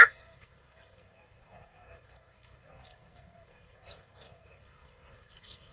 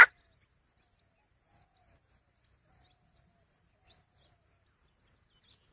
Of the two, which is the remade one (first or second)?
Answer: first